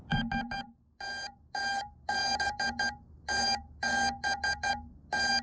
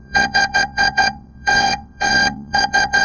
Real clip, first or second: first